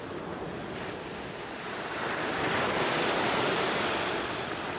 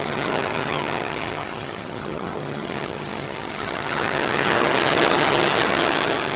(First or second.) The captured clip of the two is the first